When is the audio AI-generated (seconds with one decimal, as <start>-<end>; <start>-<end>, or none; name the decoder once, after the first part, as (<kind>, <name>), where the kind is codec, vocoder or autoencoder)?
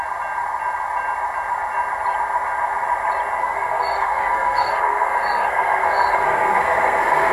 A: 3.4-7.3 (codec, SNAC)